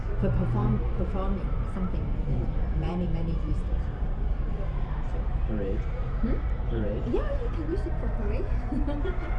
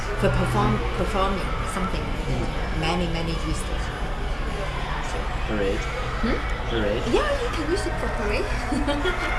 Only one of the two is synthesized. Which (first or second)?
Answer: first